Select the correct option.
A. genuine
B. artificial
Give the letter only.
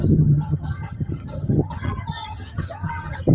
B